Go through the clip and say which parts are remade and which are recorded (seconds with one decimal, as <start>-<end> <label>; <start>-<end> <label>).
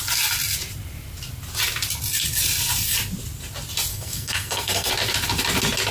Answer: 0.0-3.9 recorded; 3.9-4.9 remade; 4.9-5.9 recorded